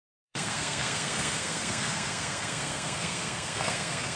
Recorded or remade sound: remade